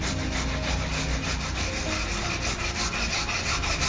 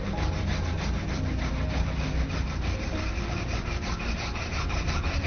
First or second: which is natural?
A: first